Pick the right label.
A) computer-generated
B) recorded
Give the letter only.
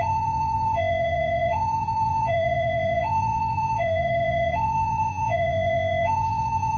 A